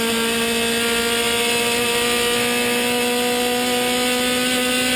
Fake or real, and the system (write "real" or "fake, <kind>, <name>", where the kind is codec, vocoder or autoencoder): real